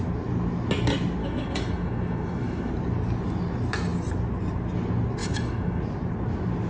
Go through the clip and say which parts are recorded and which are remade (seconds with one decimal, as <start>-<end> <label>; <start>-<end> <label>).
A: 0.0-1.2 recorded; 1.2-2.7 remade; 2.7-5.2 recorded; 5.2-5.8 remade; 5.8-6.7 recorded